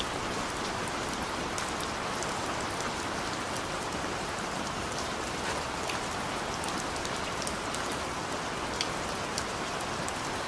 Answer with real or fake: real